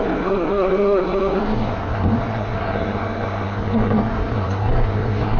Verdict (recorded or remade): remade